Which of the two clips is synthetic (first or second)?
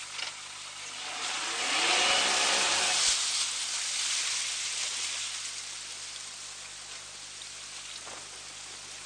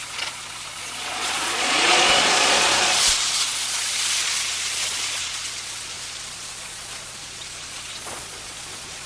second